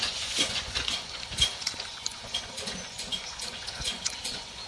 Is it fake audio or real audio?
fake